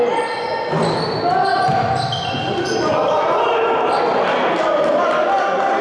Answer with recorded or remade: recorded